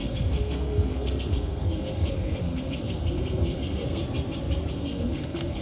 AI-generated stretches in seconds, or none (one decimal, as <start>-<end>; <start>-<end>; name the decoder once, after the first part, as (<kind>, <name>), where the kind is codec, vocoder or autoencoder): 0.0-4.0 (codec, SNAC); 4.7-5.6

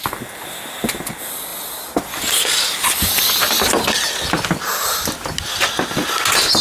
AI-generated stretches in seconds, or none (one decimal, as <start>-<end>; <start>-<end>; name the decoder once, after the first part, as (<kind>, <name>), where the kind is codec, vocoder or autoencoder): none

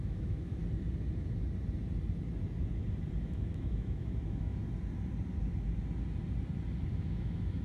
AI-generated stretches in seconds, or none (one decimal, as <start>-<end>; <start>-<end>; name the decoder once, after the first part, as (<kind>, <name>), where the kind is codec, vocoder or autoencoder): 0.0-0.6 (autoencoder, DAC-VAE); 3.2-4.6; 6.9-7.6

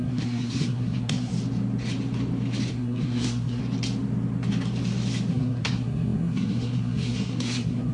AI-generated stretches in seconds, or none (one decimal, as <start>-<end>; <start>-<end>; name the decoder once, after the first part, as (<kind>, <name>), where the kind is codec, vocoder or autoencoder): 0.0-1.3 (codec, SNAC); 2.7-3.6; 5.3-7.9

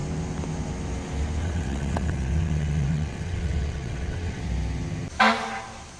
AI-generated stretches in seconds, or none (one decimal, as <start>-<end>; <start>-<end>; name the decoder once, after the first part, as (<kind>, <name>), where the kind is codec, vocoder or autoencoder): 1.4-4.4 (vocoder, WaveNeXt)

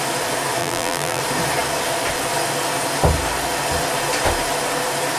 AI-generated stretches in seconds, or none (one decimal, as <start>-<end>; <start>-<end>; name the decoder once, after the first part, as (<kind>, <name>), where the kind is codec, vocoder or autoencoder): 0.6-1.2 (vocoder, BigVGAN v2)

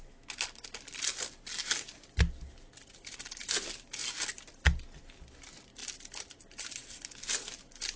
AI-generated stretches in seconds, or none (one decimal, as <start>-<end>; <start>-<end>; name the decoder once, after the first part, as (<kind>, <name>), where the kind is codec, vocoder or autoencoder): none